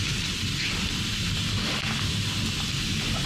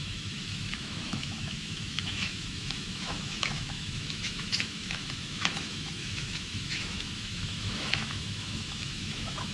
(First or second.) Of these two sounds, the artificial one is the second